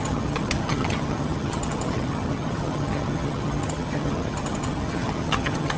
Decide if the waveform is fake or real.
fake